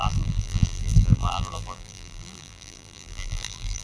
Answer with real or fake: fake